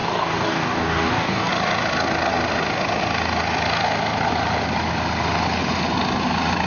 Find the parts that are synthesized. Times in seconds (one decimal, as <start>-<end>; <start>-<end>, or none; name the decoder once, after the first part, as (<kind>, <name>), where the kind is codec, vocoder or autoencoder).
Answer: 0.0-1.5 (codec, DAC)